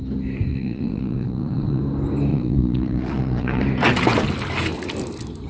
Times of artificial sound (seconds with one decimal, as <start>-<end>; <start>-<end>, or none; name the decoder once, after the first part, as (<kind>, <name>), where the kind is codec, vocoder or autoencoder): 0.5-1.8 (vocoder, Vocos); 2.3-3.6